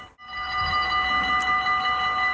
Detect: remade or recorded recorded